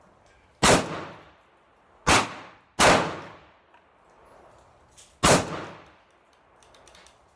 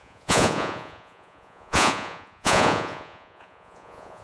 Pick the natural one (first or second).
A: first